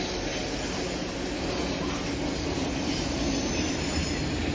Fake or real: real